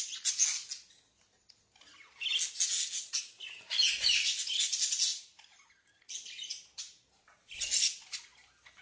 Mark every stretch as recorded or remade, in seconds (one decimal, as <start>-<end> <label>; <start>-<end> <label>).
0.0-8.8 recorded